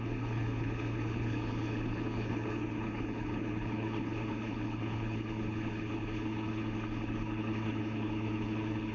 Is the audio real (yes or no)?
no